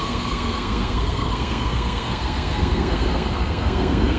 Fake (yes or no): yes